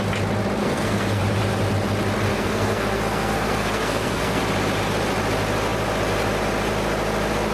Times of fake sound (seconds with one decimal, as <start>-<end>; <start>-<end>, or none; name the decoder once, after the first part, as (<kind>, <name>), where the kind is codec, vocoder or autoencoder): 0.6-1.2 (codec, SNAC); 2.3-4.4